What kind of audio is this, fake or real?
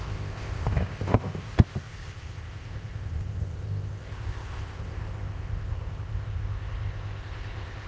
fake